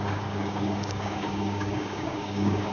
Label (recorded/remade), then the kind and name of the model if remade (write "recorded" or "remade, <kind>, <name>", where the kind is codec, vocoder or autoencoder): remade, codec, DAC